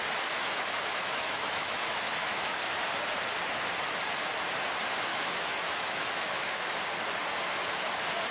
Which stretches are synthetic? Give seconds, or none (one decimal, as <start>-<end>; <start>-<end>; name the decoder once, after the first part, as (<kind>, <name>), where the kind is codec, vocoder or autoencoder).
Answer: 0.4-2.8 (autoencoder, DAC-VAE); 5.1-6.7